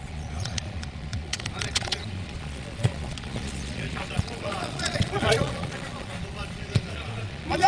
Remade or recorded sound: remade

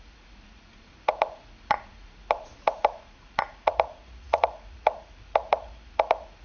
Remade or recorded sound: remade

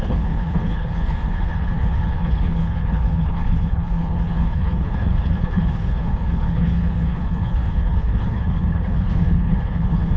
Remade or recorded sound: remade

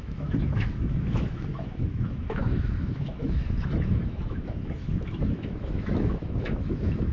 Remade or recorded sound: remade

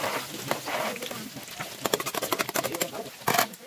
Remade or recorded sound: recorded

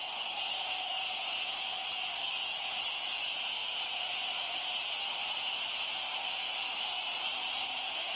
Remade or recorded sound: recorded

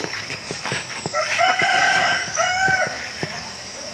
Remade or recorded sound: remade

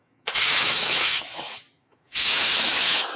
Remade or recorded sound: remade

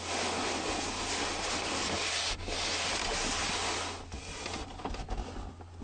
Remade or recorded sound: recorded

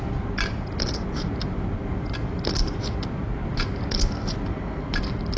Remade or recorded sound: recorded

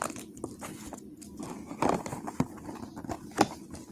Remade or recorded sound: recorded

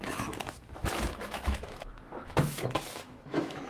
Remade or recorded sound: remade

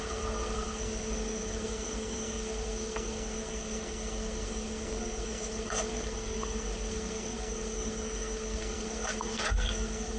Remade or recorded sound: remade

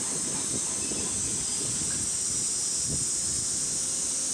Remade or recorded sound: recorded